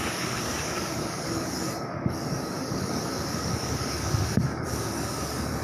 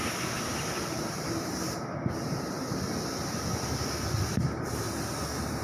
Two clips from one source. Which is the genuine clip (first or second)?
second